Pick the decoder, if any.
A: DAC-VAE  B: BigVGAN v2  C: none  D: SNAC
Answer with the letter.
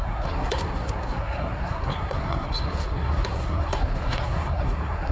D